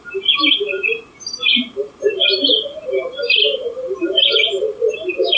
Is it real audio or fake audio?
fake